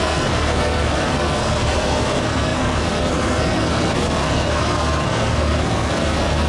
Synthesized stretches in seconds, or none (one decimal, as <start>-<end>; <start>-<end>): 0.0-6.5